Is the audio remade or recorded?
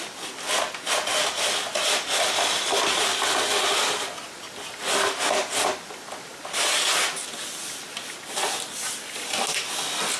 recorded